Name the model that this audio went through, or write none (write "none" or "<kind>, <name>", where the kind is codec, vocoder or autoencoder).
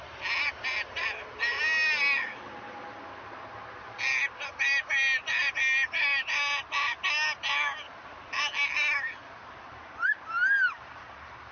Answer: none